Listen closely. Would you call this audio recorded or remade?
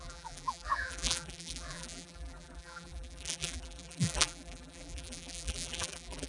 remade